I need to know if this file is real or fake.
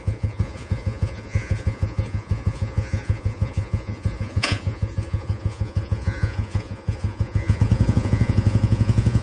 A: fake